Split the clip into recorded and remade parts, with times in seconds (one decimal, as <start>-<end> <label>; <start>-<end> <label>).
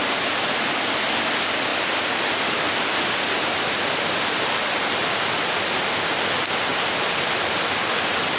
0.0-8.4 recorded